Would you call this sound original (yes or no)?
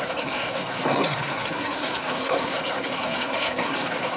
no